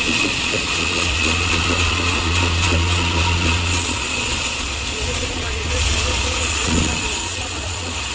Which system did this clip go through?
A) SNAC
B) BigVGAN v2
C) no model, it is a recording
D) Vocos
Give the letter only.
D